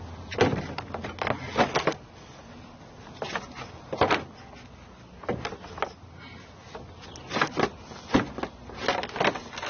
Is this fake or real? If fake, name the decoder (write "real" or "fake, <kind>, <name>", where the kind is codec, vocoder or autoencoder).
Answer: real